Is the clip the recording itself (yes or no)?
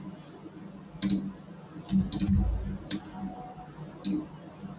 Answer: yes